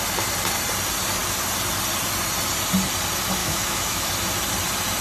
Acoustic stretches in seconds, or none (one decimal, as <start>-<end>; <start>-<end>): 0.0-3.4; 4.1-5.0